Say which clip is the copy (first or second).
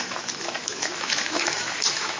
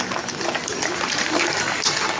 first